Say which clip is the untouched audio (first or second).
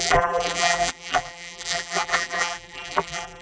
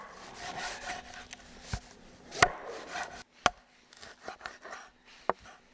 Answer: second